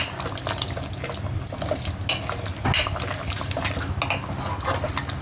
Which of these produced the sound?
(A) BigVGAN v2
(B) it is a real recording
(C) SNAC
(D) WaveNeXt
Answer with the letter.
B